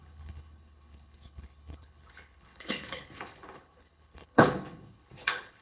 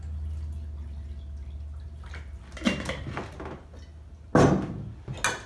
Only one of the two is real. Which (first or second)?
second